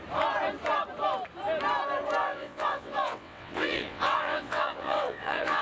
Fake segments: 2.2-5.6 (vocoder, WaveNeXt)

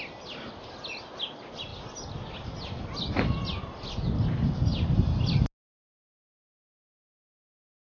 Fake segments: none

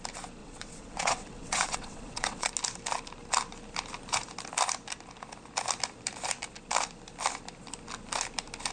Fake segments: 0.4-2.5 (vocoder, WaveNeXt)

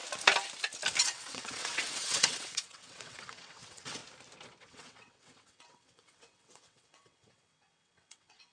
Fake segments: 1.0-4.0 (vocoder, WaveNeXt); 4.6-8.5

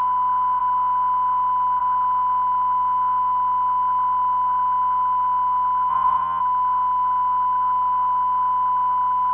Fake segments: 5.9-6.4 (vocoder, WaveNeXt)

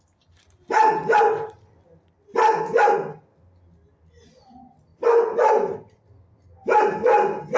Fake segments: none